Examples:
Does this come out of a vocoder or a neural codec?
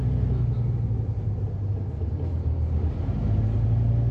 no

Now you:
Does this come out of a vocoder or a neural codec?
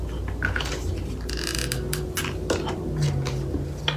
no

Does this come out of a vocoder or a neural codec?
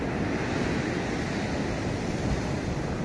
no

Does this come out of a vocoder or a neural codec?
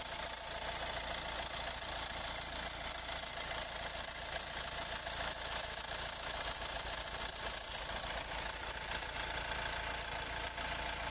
no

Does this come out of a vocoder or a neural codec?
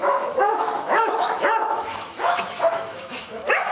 yes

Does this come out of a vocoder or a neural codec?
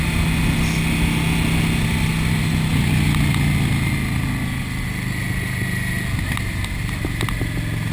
no